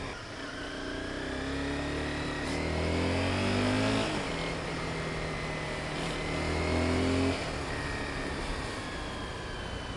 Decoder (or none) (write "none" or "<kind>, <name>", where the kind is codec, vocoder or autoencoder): none